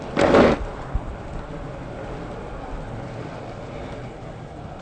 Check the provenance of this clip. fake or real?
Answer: real